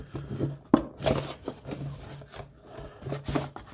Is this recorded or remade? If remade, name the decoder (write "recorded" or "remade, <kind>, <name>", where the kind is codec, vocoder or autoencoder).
recorded